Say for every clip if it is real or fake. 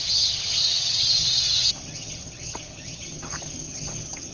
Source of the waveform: fake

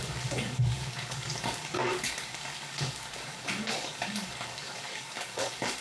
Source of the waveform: fake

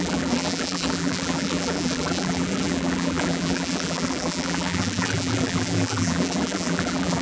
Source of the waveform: fake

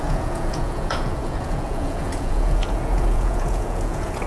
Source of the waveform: fake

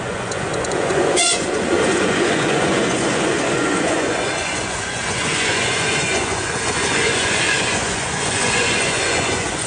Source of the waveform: fake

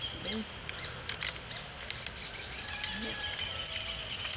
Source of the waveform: real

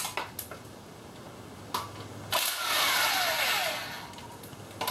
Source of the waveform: real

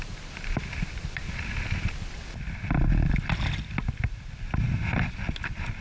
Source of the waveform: real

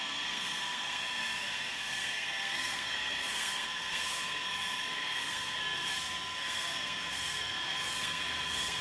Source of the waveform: fake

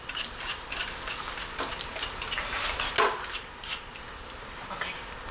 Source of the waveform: real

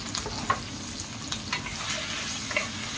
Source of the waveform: real